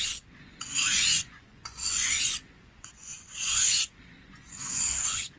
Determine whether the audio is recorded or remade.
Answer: remade